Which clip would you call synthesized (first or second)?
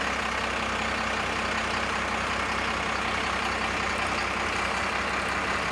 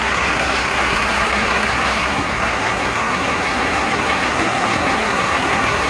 second